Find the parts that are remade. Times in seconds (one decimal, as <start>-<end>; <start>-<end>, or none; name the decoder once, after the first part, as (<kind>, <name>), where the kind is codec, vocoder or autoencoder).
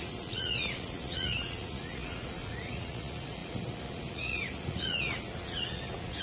0.0-6.2 (vocoder, Vocos)